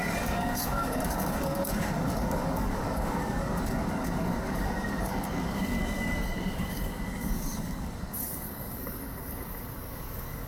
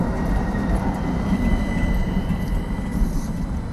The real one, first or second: second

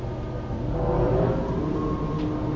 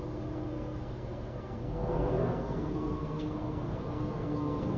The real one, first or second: first